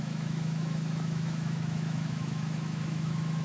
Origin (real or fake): fake